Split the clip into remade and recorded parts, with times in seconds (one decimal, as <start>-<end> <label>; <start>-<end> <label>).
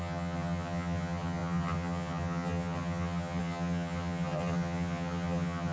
0.0-5.7 remade